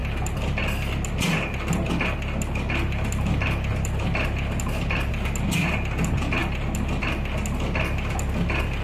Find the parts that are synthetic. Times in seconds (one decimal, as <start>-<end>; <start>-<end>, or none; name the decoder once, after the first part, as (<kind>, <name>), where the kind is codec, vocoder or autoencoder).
none